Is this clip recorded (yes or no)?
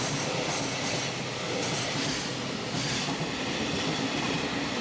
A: yes